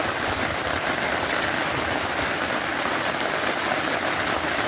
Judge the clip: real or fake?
real